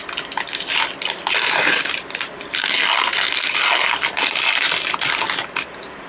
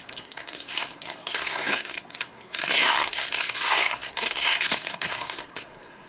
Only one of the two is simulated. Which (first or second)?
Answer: second